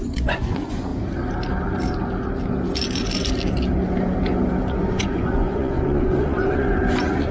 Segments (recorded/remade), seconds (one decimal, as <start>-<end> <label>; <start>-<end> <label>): 0.0-0.9 remade; 0.9-4.9 recorded; 4.9-7.3 remade